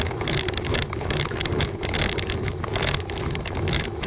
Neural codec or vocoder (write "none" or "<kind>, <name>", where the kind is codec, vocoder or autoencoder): autoencoder, DAC-VAE